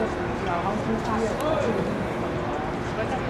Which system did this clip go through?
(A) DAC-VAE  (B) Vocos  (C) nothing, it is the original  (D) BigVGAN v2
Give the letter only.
C